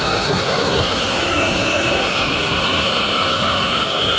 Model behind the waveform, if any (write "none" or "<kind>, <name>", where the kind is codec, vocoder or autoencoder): codec, SNAC